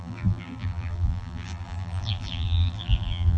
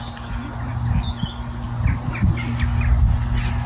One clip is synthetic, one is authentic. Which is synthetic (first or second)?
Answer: first